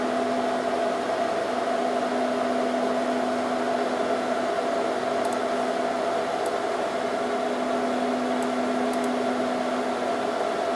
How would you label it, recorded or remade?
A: recorded